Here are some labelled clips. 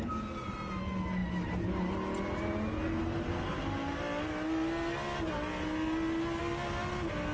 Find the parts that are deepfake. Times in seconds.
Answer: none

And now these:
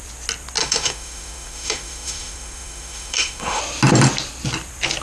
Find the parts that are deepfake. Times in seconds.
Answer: 0.6-3.6 (autoencoder, DAC-VAE)

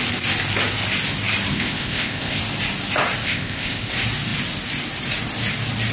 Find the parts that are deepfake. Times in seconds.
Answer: 1.5-2.4 (codec, ZipCodec); 3.2-3.9

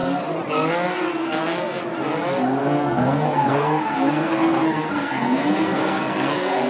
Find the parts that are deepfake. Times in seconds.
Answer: 1.1-1.6 (codec, SNAC); 2.6-6.7